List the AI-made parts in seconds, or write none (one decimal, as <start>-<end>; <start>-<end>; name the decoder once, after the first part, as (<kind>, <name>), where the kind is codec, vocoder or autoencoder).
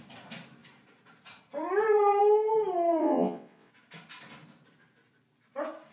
3.0-3.7 (vocoder, WaveNeXt)